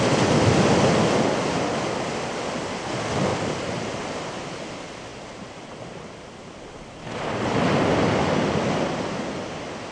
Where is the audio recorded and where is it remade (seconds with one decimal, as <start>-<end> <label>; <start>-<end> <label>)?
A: 0.0-3.3 recorded; 3.3-4.4 remade; 4.4-5.1 recorded; 5.1-5.7 remade; 5.7-9.9 recorded